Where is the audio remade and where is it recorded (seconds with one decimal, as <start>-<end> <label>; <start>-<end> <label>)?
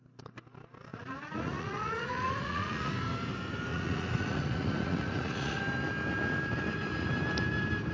0.0-0.9 recorded; 0.9-2.9 remade; 2.9-3.7 recorded; 3.7-5.6 remade; 5.6-7.9 recorded